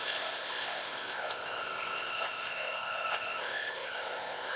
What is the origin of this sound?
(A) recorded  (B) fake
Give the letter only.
B